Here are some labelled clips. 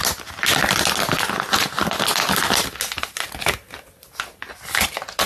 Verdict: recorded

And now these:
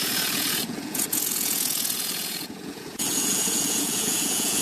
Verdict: remade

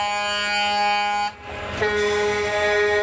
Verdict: recorded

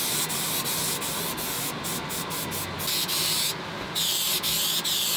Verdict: recorded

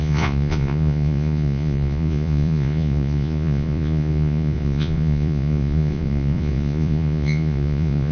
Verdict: remade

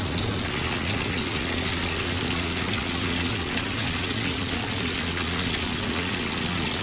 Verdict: remade